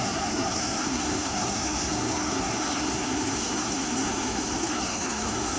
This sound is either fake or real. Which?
fake